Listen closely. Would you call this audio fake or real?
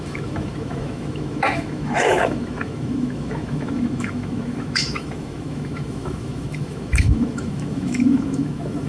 fake